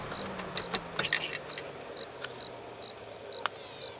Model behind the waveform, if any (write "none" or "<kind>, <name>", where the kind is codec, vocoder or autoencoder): none